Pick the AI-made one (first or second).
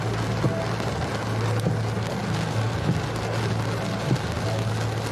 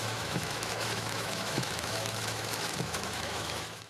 second